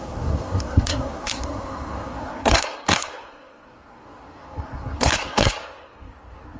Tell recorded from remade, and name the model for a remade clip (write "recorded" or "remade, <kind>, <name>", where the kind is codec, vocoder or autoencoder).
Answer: remade, codec, SNAC